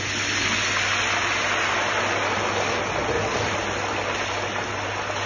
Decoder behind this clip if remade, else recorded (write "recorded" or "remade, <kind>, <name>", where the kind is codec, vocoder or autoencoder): recorded